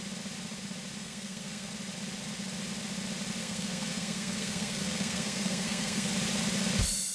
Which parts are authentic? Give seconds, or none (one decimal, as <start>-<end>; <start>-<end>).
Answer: 0.0-1.0; 1.7-3.4; 6.1-7.1